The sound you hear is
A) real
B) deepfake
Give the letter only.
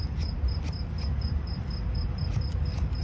A